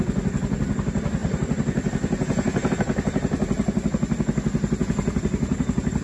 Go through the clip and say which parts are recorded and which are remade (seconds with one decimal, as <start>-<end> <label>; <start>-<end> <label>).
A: 0.0-6.0 recorded